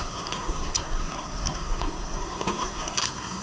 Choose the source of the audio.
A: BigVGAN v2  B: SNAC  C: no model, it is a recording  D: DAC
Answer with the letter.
B